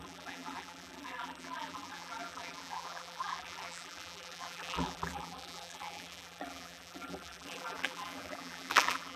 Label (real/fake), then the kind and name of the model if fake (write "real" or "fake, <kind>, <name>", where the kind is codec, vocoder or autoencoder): fake, vocoder, BigVGAN v2